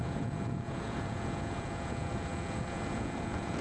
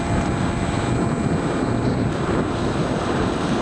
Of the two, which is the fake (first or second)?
first